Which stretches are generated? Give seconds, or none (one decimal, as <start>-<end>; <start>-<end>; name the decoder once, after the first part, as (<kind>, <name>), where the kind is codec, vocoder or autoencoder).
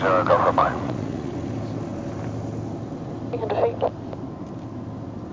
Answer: 0.6-1.3 (vocoder, Vocos)